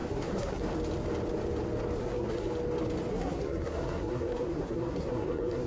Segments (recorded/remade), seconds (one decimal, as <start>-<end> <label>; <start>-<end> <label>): 0.0-0.6 remade; 0.6-2.0 recorded; 2.0-2.5 remade; 2.5-3.1 recorded; 3.1-5.7 remade